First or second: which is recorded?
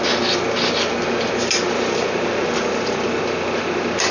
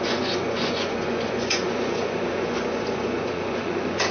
first